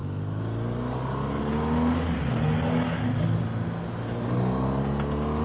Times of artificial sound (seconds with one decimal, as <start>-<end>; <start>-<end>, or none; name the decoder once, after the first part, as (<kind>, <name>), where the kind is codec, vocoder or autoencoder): none